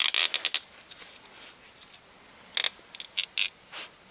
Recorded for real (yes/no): yes